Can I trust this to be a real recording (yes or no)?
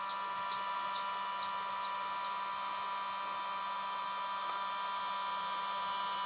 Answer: yes